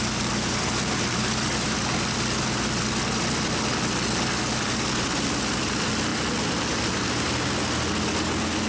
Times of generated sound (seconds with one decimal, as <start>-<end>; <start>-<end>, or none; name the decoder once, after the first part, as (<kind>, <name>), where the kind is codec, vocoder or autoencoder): none